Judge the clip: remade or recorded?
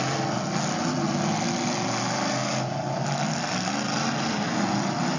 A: recorded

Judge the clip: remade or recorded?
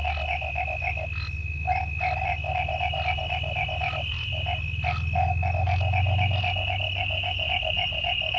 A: recorded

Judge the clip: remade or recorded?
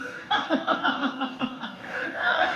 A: remade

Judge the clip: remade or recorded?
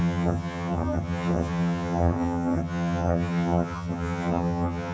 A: remade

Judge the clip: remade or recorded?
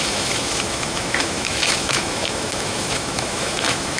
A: remade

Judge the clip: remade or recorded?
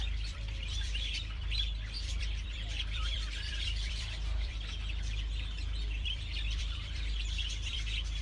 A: remade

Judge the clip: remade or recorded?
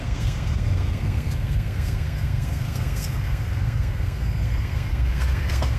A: remade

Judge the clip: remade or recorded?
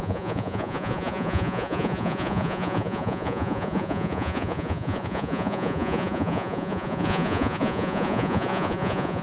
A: remade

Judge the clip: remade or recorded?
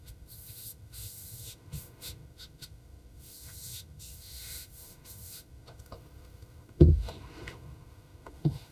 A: remade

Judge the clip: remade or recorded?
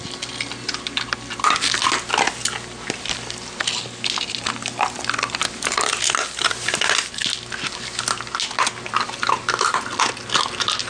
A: recorded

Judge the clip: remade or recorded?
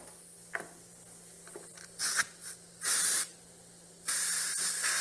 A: recorded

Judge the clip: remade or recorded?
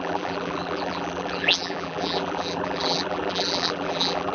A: remade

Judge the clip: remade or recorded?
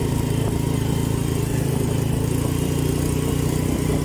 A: recorded